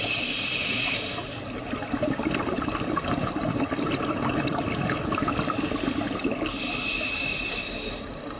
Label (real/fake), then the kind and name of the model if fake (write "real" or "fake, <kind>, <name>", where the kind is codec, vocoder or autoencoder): real